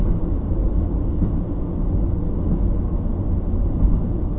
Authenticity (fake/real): real